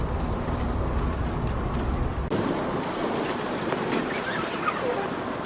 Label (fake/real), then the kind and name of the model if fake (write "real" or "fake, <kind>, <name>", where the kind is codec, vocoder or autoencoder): real